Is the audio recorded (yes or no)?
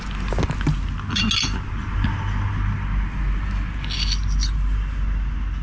yes